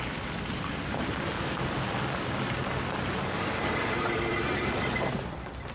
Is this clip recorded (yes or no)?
no